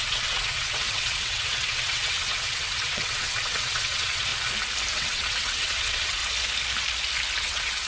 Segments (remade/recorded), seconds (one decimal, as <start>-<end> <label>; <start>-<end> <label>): 0.0-4.3 remade; 4.3-4.9 recorded; 4.9-6.2 remade; 6.2-7.4 recorded; 7.4-7.9 remade